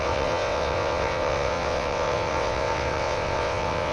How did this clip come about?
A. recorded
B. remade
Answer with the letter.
B